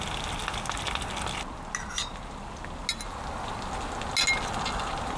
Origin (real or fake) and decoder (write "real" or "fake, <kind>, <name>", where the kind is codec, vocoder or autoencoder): real